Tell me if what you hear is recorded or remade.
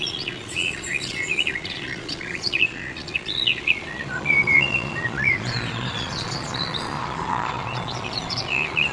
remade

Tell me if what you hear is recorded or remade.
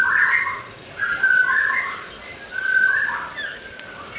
recorded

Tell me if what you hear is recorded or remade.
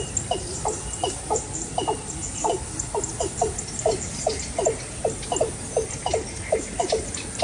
recorded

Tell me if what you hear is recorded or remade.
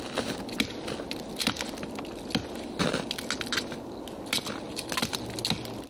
recorded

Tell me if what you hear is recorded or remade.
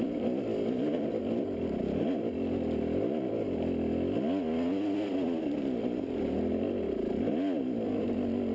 recorded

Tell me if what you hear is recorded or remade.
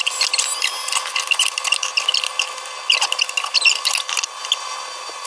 recorded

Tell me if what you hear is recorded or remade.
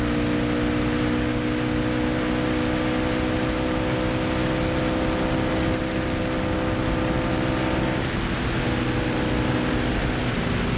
recorded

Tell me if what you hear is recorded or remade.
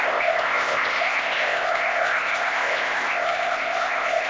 remade